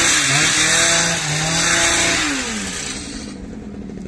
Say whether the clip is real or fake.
real